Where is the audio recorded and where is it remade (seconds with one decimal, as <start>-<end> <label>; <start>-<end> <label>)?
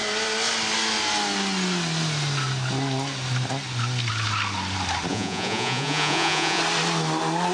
0.0-5.1 recorded; 5.1-6.6 remade; 6.6-7.5 recorded